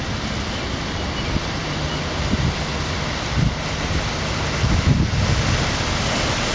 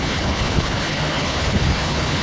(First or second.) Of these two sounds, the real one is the first